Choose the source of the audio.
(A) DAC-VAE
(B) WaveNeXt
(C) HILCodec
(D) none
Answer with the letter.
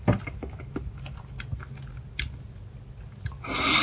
D